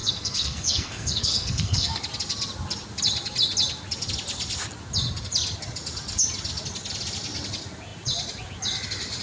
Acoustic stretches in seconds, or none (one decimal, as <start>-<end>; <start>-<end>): 2.0-9.2